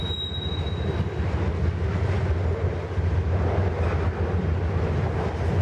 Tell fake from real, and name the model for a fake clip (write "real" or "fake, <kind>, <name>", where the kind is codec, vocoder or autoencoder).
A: real